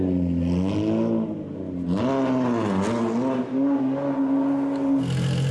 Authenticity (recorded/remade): recorded